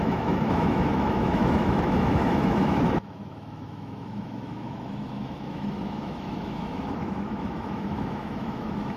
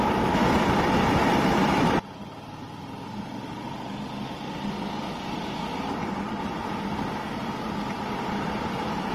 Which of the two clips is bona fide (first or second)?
second